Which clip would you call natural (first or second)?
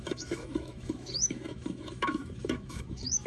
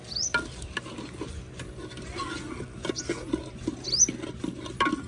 second